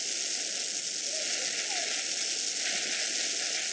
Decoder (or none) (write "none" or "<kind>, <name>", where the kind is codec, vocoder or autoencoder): none